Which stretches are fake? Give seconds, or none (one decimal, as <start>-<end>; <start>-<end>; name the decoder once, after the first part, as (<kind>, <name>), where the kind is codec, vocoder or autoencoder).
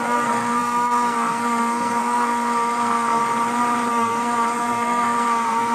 0.0-3.2 (codec, SNAC); 3.9-5.7